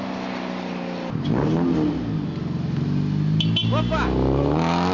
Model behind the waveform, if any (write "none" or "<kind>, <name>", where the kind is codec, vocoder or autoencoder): none